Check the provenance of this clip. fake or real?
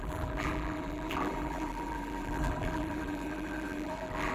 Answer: fake